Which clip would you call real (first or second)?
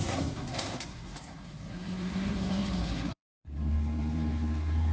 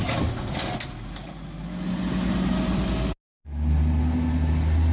second